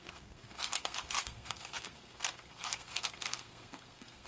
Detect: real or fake fake